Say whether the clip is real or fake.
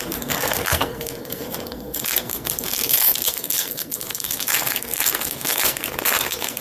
fake